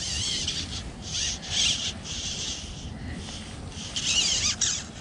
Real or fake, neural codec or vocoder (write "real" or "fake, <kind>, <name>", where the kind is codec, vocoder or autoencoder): real